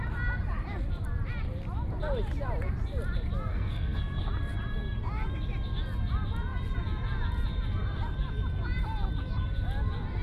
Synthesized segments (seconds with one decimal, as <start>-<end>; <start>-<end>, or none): 3.5-4.3